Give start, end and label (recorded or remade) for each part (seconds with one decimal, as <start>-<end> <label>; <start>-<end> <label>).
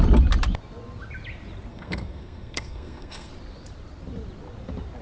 0.0-1.7 recorded; 1.7-3.3 remade; 3.3-5.0 recorded